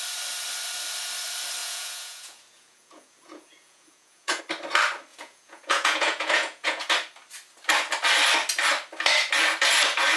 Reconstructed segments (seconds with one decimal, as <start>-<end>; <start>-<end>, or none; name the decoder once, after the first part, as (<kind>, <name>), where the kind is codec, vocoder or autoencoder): 1.6-4.4 (vocoder, Vocos); 5.1-6.9

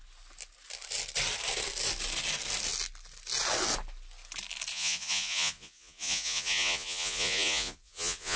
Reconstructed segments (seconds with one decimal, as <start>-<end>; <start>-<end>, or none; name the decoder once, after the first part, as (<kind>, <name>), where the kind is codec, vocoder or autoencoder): 4.7-8.4 (vocoder, Vocos)

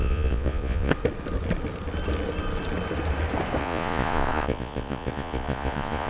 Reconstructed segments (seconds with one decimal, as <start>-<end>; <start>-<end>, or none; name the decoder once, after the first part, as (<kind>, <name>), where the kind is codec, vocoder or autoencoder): 0.0-0.9 (vocoder, Vocos); 3.6-6.1

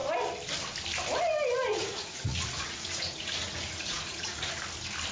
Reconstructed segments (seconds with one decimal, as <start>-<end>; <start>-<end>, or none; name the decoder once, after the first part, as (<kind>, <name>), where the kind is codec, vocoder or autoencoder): 1.7-4.6 (vocoder, Vocos)

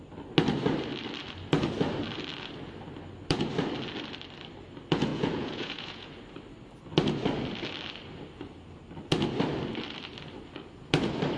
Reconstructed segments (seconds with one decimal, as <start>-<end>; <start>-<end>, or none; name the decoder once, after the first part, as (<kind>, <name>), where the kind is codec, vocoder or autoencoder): 5.1-6.2 (vocoder, Vocos)